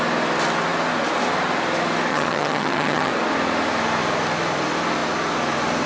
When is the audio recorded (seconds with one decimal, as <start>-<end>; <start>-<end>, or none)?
0.0-2.1; 3.1-5.9